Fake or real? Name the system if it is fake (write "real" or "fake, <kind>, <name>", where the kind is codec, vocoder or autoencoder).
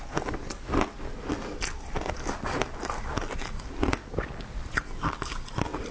real